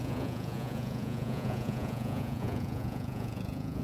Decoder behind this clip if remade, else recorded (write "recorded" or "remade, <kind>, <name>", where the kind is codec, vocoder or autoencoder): remade, vocoder, Vocos